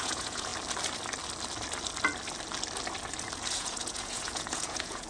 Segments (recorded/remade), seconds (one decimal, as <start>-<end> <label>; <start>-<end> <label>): 0.0-0.5 remade; 0.5-3.6 recorded; 3.6-5.1 remade